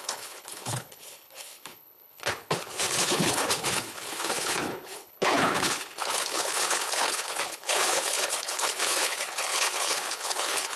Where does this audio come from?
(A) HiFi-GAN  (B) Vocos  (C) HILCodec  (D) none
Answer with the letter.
C